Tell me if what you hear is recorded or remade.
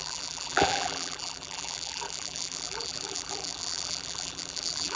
remade